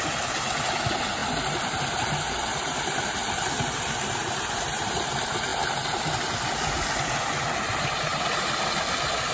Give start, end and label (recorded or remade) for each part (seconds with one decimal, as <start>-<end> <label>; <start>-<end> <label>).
0.0-9.3 recorded